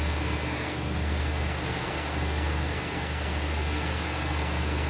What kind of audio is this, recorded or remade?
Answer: remade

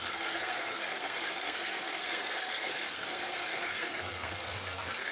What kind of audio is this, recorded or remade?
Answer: remade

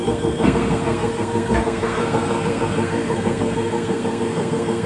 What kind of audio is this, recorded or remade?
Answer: remade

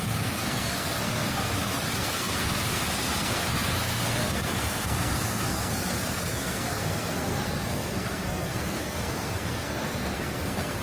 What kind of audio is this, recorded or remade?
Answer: remade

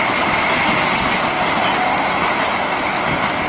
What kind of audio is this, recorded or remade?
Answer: recorded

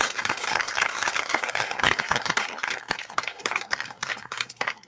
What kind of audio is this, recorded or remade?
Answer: remade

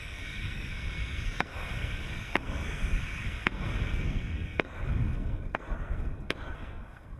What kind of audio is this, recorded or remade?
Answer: remade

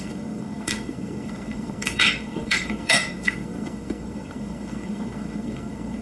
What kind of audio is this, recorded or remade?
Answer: remade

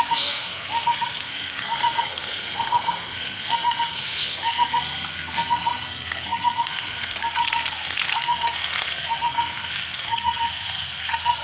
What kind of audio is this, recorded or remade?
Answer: remade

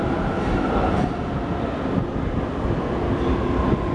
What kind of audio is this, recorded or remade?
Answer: recorded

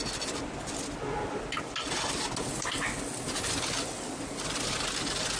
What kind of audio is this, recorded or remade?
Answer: recorded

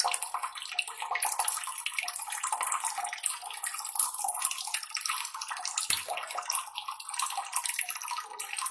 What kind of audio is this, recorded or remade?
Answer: recorded